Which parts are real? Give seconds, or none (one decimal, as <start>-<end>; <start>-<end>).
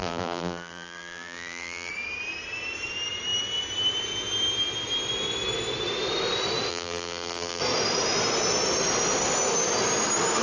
1.9-6.7; 7.6-10.4